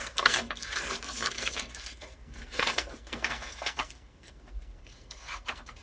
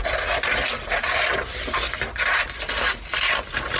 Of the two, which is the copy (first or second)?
first